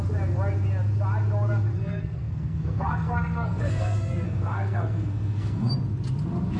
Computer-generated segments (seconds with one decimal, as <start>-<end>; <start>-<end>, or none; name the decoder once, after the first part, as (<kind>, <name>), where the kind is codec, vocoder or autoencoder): 1.7-5.7 (codec, SNAC)